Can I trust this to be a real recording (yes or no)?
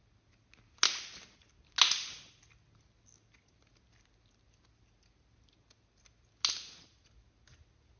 yes